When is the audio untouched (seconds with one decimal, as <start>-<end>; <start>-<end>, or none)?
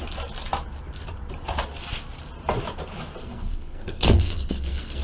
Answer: 0.0-3.2